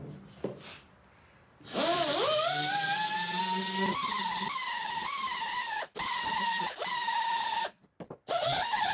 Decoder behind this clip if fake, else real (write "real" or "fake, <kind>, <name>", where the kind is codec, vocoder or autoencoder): real